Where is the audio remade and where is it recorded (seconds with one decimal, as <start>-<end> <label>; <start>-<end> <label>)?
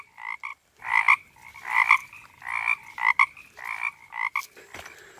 0.0-5.2 recorded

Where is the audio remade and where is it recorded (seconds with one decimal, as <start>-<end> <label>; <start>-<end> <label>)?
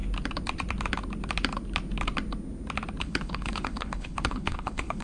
0.0-3.0 recorded; 3.0-5.0 remade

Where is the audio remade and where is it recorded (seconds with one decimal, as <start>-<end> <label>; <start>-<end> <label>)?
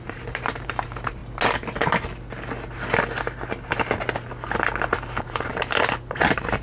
0.0-1.2 remade; 1.2-5.2 recorded; 5.2-6.6 remade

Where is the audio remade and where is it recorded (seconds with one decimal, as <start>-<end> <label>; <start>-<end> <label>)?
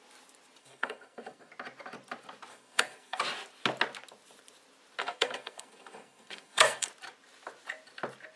0.0-0.6 recorded; 0.6-1.5 remade; 1.5-2.5 recorded; 2.5-3.2 remade; 3.2-5.0 recorded; 5.0-6.9 remade; 6.9-8.4 recorded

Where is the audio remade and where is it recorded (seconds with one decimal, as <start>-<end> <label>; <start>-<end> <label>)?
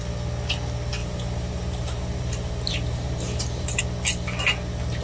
0.0-1.0 recorded; 1.0-3.8 remade; 3.8-5.0 recorded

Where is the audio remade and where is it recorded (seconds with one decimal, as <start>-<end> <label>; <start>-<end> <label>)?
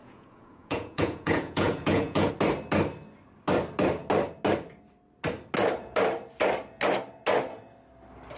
0.0-2.3 remade; 2.3-8.4 recorded